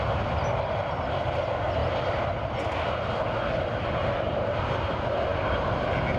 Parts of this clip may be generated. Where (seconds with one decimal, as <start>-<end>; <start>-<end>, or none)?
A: none